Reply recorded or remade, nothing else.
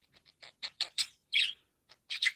remade